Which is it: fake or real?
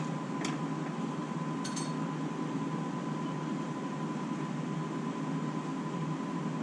real